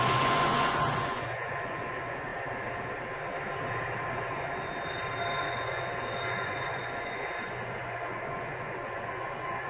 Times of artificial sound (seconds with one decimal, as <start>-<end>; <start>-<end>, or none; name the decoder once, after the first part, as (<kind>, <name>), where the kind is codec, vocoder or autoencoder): 0.0-2.3 (vocoder, Vocos); 4.1-4.7; 5.4-9.7